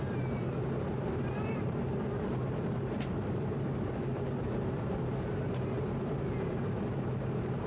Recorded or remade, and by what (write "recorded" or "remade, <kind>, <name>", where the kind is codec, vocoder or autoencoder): remade, vocoder, BigVGAN v2